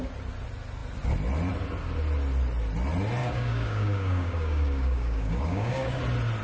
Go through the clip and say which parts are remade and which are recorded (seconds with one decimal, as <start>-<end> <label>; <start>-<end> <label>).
0.0-3.2 recorded; 3.2-6.0 remade; 6.0-6.4 recorded